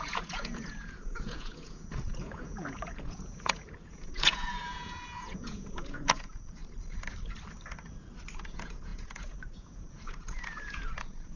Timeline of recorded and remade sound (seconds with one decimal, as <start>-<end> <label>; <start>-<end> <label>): 0.0-6.6 remade; 6.6-8.5 recorded; 8.5-11.4 remade